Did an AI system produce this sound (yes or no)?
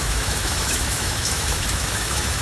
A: yes